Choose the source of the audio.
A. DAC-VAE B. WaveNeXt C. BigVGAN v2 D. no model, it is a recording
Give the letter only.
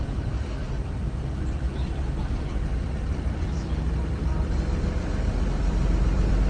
C